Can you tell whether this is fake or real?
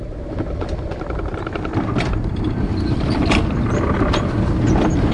real